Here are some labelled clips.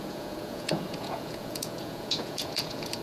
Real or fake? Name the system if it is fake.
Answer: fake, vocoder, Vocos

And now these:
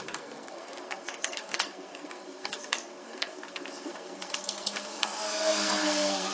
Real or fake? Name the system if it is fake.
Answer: fake, codec, SNAC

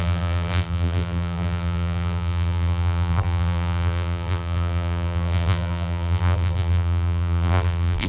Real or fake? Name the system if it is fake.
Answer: fake, vocoder, BigVGAN v2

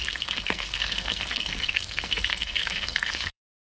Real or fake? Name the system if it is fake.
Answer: fake, codec, SNAC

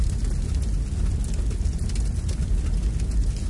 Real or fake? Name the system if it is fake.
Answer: real